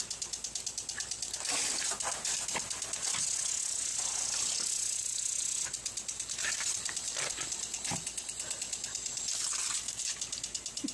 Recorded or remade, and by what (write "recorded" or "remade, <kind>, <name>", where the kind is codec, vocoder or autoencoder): recorded